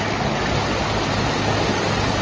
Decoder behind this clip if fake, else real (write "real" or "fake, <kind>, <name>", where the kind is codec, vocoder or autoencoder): real